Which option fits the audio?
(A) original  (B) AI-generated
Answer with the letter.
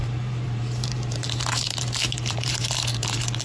B